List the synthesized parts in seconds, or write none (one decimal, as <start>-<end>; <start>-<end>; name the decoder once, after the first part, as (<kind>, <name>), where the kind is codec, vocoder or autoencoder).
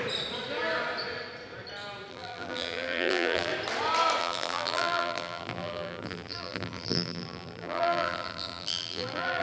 2.1-3.5 (vocoder, BigVGAN v2); 4.2-9.4